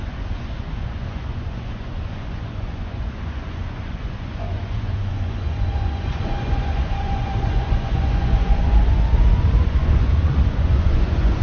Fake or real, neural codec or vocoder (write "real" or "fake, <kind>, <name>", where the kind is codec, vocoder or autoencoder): fake, vocoder, Vocos